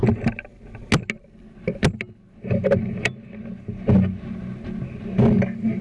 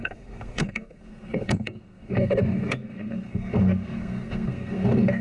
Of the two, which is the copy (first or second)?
second